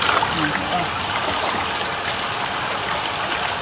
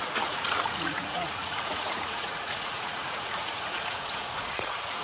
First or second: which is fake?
second